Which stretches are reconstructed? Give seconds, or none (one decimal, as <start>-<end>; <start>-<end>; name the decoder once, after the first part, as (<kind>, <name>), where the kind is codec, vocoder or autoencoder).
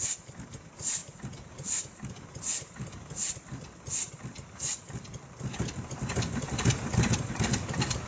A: 0.0-8.1 (vocoder, BigVGAN v2)